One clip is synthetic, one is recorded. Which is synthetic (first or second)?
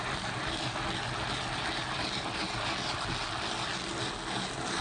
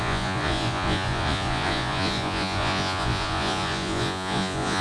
second